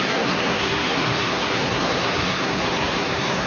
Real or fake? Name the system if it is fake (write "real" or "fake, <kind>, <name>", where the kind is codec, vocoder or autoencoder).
fake, codec, SNAC